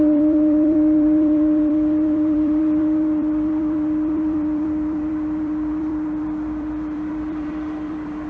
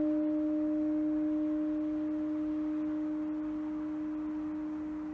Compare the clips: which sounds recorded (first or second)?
second